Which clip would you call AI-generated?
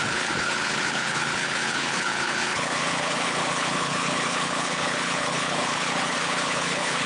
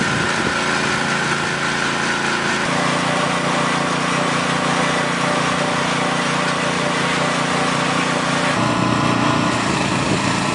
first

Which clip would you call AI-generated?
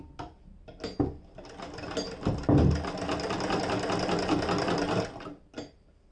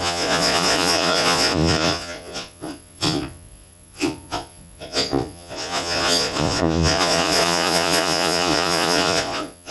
second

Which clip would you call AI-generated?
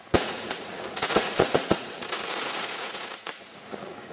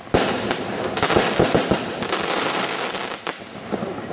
first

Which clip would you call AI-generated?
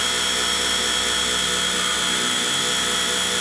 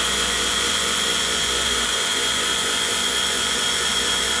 second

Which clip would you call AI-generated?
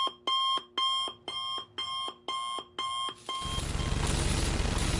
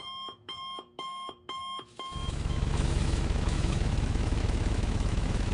second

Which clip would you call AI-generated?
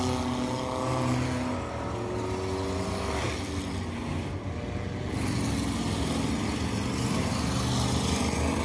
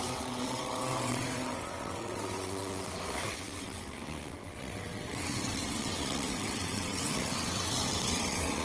second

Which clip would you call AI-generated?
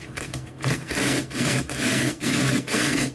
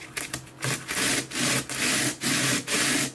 first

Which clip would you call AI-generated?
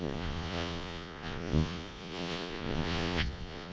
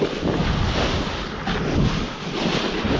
first